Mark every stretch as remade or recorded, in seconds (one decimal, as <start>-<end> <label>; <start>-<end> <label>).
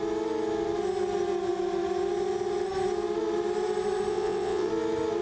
0.0-4.1 recorded; 4.1-4.7 remade; 4.7-5.2 recorded